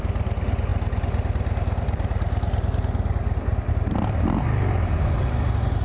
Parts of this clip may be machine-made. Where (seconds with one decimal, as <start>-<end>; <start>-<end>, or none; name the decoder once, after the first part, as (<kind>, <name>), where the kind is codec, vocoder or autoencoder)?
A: none